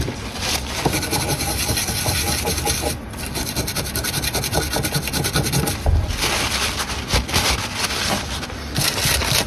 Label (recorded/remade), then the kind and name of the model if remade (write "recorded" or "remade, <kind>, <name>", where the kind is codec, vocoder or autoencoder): recorded